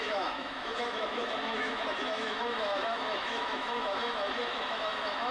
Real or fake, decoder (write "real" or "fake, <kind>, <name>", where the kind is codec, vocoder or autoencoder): fake, autoencoder, DAC-VAE